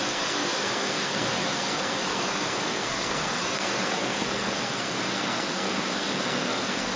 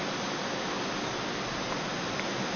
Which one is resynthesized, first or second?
first